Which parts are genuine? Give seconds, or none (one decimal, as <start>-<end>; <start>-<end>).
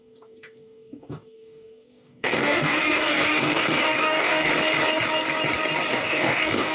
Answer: 4.5-5.9